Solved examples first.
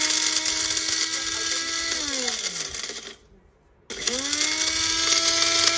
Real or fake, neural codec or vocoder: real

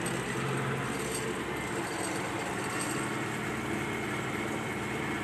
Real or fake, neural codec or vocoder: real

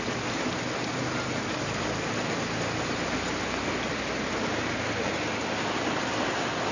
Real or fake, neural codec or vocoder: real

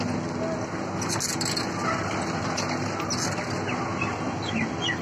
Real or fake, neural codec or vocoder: real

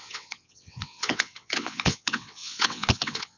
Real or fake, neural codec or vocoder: fake, vocoder, WaveNeXt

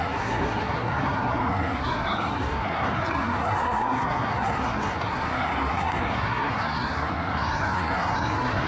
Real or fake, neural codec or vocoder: fake, codec, SNAC